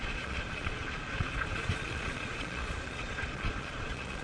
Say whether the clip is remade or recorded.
remade